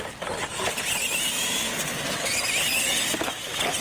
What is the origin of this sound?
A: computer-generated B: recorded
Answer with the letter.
B